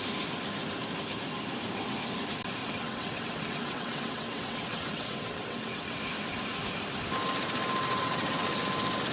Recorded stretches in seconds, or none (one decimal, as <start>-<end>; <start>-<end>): 0.0-2.6; 6.0-7.9; 8.5-9.1